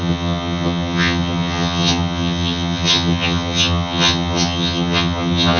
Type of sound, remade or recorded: remade